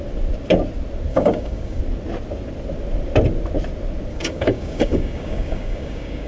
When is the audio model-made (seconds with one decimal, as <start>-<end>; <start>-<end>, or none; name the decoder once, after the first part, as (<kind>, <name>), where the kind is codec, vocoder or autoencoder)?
1.1-1.8 (codec, DAC); 4.1-6.3